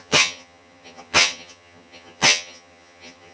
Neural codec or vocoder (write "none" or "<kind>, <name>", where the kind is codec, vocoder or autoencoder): vocoder, HiFi-GAN